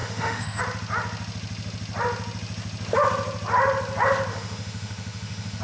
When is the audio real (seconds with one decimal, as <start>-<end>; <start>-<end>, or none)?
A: 0.6-4.3